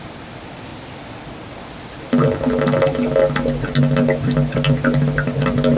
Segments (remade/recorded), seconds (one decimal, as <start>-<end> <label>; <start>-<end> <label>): 0.0-5.8 recorded